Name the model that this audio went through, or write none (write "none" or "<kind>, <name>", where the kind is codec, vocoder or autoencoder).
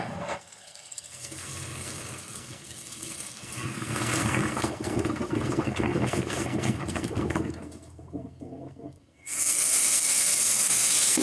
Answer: codec, SNAC